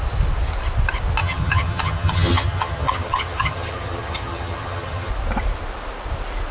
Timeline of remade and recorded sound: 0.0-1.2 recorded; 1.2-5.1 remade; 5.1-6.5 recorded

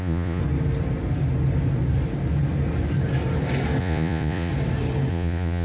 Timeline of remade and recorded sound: 0.0-0.4 remade; 0.4-3.8 recorded; 3.8-4.5 remade; 4.5-5.1 recorded; 5.1-5.6 remade

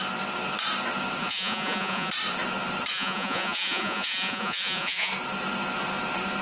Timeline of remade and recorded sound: 0.0-1.2 recorded; 1.2-2.1 remade; 2.1-2.9 recorded; 2.9-5.1 remade; 5.1-6.4 recorded